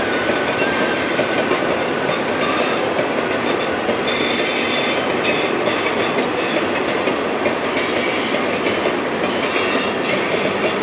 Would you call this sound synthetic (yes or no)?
no